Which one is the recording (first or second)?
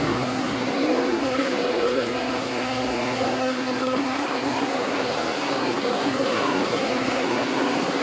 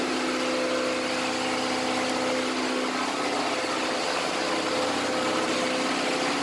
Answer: second